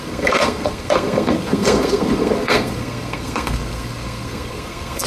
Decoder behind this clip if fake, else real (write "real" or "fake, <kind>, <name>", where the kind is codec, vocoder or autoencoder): fake, codec, SNAC